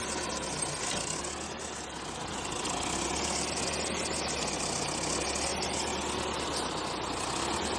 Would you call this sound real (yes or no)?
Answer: yes